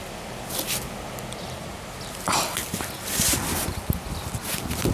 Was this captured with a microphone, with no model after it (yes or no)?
yes